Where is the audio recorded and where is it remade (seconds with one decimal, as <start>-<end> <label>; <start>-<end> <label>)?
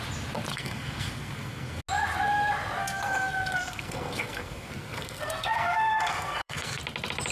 0.0-0.5 recorded; 0.5-1.8 remade; 1.8-2.8 recorded; 2.8-6.8 remade; 6.8-7.3 recorded